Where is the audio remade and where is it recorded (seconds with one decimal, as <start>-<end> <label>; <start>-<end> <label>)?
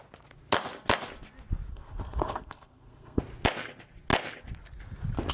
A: 0.0-1.7 recorded; 1.7-3.2 remade; 3.2-5.3 recorded